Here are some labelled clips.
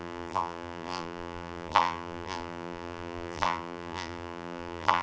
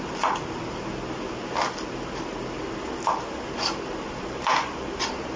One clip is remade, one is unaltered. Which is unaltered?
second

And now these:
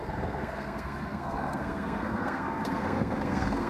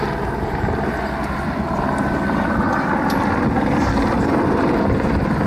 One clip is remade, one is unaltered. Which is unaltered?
second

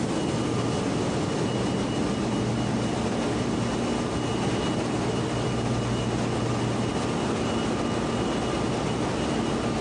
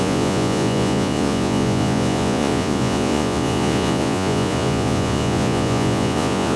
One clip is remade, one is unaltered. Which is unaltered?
first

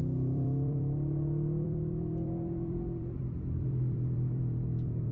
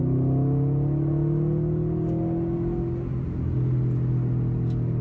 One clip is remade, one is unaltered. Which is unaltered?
second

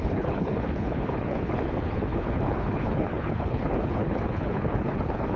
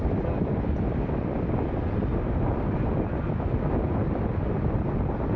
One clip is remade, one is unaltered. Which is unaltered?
second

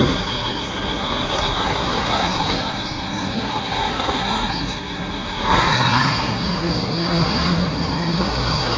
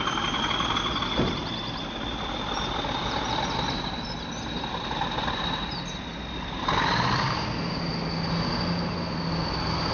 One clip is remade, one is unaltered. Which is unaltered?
second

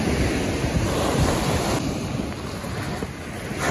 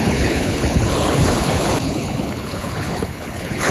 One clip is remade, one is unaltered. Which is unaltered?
first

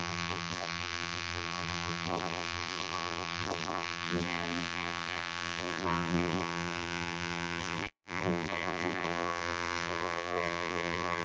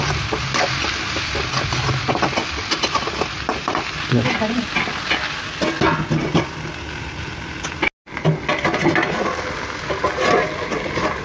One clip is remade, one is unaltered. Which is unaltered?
second